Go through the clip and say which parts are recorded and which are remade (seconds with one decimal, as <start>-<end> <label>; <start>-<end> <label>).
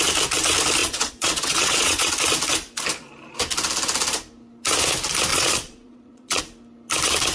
0.0-0.8 recorded; 0.8-2.1 remade; 2.1-5.3 recorded; 5.3-6.4 remade; 6.4-7.3 recorded